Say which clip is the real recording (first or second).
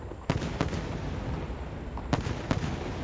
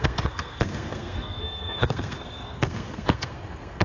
first